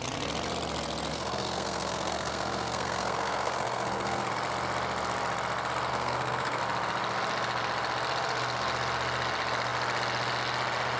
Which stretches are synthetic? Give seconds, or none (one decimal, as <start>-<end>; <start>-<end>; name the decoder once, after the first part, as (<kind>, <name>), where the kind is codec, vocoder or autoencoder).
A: 1.1-4.3 (codec, SNAC); 5.9-6.6

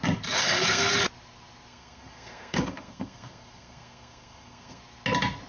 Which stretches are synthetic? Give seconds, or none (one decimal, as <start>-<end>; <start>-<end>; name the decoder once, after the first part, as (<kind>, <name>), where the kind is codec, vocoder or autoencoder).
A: 0.4-0.9 (codec, SNAC); 1.7-4.8

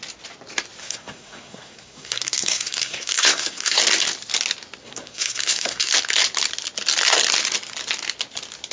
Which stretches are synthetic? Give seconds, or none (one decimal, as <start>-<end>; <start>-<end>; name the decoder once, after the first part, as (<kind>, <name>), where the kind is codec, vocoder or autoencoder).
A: 0.8-3.8 (codec, SNAC); 4.8-5.9

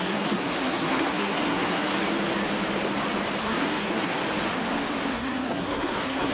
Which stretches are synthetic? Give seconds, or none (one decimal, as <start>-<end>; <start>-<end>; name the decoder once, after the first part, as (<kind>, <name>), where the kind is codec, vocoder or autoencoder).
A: 0.0-1.9 (codec, SNAC); 3.4-4.2; 5.1-6.3

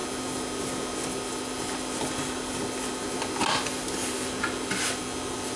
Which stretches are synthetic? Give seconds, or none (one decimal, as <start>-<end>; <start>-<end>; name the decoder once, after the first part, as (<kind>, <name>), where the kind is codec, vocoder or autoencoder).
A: none

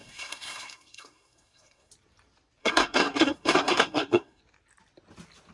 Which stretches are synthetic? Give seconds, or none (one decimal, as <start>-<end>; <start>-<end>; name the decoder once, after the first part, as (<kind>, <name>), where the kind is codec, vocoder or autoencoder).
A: 0.0-1.9 (codec, SNAC); 2.6-4.4